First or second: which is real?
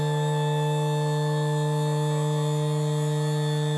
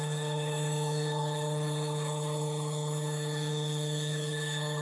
first